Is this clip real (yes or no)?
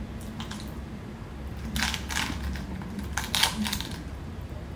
yes